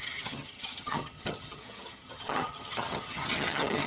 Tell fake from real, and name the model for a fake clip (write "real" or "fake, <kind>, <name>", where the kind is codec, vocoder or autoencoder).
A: fake, vocoder, HiFi-GAN